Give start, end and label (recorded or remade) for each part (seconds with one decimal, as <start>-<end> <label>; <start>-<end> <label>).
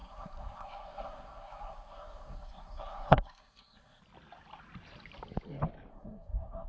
0.0-4.0 remade; 4.0-5.9 recorded; 5.9-6.7 remade